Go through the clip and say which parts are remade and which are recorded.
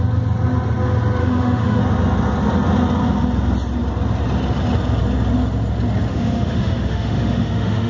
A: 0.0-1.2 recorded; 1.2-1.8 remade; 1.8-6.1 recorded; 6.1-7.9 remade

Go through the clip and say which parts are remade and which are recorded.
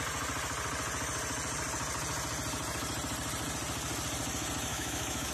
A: 0.0-4.7 recorded; 4.7-5.3 remade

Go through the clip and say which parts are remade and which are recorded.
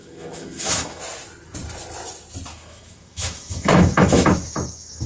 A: 0.0-1.0 remade; 1.0-2.5 recorded; 2.5-5.1 remade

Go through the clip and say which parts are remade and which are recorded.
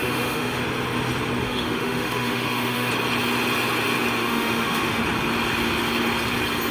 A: 0.0-0.6 remade; 0.6-1.4 recorded; 1.4-2.9 remade; 2.9-4.2 recorded; 4.2-5.0 remade; 5.0-6.7 recorded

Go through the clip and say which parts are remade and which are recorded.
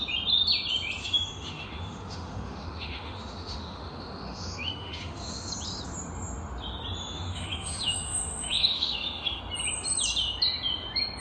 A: 0.0-1.0 recorded; 1.0-5.5 remade; 5.5-7.0 recorded; 7.0-9.4 remade; 9.4-11.2 recorded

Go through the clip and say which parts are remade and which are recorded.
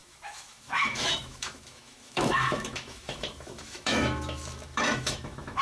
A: 0.0-5.6 remade